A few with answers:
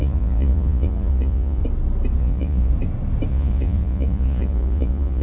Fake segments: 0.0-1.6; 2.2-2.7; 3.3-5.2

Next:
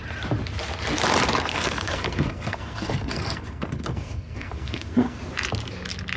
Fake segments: 1.5-5.2

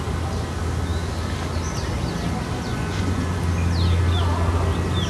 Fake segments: 2.7-3.4